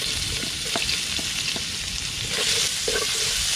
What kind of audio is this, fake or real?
real